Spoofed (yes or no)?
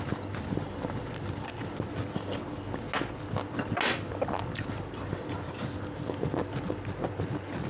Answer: no